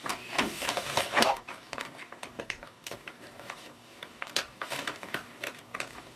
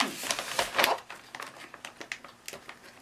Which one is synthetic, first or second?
first